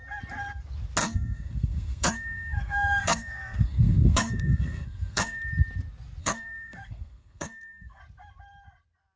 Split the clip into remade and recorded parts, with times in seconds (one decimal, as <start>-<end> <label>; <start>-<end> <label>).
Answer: 0.0-1.0 recorded; 1.0-5.4 remade; 5.4-6.2 recorded; 6.2-8.0 remade; 8.0-9.2 recorded